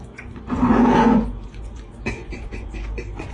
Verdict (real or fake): fake